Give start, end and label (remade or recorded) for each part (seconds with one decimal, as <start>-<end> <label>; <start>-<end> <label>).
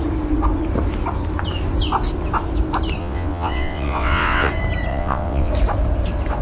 0.0-3.0 recorded; 3.0-4.5 remade; 4.5-4.9 recorded; 4.9-5.5 remade; 5.5-6.4 recorded